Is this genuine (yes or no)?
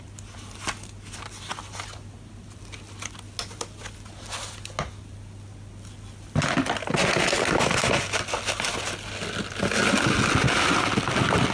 yes